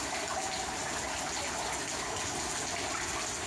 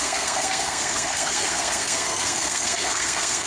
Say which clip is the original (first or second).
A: first